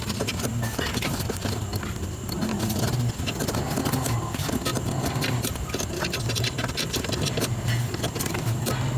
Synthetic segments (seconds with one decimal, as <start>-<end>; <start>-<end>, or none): 0.0-9.0

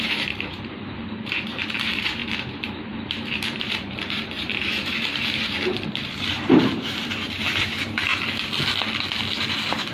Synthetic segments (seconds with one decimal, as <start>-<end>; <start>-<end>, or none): 0.0-8.1; 9.5-9.9

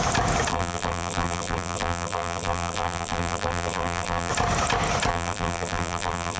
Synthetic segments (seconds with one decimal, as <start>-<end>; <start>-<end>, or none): 0.5-4.3; 5.1-6.4

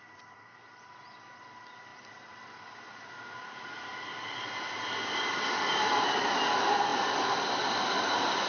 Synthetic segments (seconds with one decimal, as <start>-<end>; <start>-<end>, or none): 0.0-8.5